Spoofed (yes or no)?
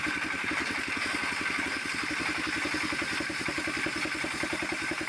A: no